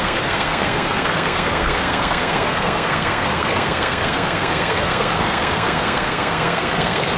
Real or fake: fake